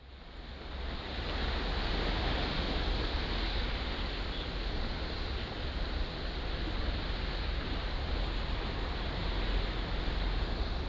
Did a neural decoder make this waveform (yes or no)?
no